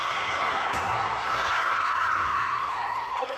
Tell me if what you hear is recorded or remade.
remade